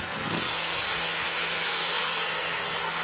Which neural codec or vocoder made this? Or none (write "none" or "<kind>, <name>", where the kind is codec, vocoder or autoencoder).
codec, SNAC